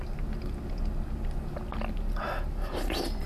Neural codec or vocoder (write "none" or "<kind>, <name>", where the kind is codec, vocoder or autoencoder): none